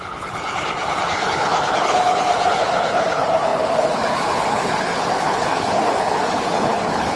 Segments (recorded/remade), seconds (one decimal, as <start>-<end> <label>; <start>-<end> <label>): 0.0-7.2 remade